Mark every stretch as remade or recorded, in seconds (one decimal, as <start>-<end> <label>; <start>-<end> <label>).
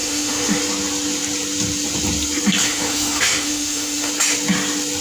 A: 0.0-0.6 remade; 0.6-2.6 recorded; 2.6-4.1 remade; 4.1-5.0 recorded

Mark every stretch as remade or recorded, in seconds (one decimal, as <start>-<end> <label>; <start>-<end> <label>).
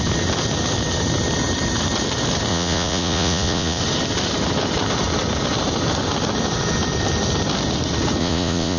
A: 0.0-2.5 recorded; 2.5-3.8 remade; 3.8-8.2 recorded; 8.2-8.8 remade